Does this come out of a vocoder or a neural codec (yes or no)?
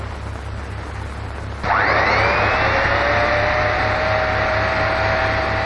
no